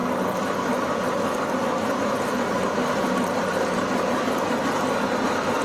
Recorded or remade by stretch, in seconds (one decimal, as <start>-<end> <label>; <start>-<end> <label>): 0.0-5.6 recorded